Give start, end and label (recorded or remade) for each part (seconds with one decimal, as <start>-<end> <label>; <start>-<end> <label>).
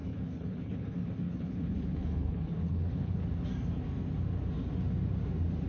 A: 0.0-3.2 remade; 3.2-5.7 recorded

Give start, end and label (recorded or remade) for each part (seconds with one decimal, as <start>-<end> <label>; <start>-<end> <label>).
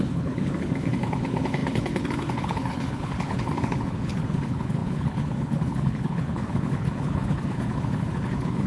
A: 0.0-8.7 remade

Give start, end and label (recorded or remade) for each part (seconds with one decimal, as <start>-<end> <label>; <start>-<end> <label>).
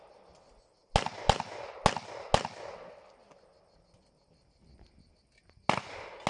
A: 0.0-6.3 recorded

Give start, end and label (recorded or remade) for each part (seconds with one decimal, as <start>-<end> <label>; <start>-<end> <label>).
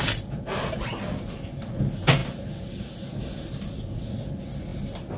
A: 0.0-5.2 recorded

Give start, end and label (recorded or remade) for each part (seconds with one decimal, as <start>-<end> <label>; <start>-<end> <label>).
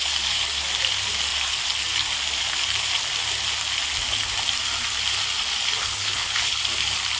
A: 0.0-5.8 recorded; 5.8-6.6 remade; 6.6-7.2 recorded